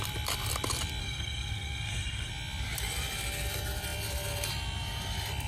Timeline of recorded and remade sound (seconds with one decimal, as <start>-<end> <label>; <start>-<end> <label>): 0.0-1.0 recorded; 1.0-2.3 remade; 2.3-5.5 recorded